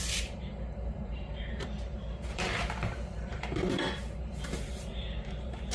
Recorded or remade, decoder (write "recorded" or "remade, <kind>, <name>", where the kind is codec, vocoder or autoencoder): remade, vocoder, BigVGAN v2